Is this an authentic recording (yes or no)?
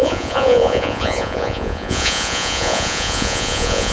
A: no